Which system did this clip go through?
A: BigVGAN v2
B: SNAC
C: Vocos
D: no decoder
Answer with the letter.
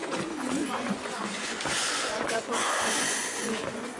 C